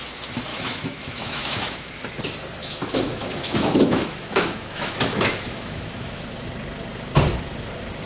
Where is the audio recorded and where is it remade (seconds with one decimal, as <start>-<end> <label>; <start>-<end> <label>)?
0.0-0.5 recorded; 0.5-1.9 remade; 1.9-2.6 recorded; 2.6-6.2 remade; 6.2-8.1 recorded